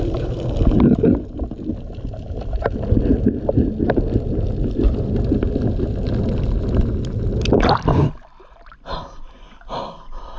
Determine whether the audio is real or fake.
real